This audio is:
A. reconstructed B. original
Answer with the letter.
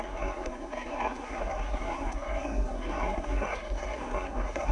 A